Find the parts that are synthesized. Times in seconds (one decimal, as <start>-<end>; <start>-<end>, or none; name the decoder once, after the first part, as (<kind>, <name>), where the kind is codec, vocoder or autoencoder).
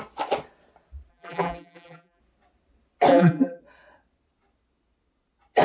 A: 1.1-2.2 (vocoder, BigVGAN v2); 3.1-3.6